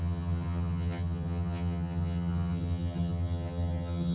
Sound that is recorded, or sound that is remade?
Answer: remade